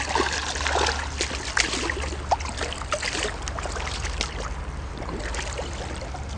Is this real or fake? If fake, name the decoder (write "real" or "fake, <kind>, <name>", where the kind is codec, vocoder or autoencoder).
real